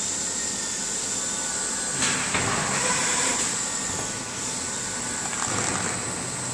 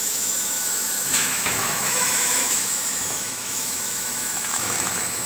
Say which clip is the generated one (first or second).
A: second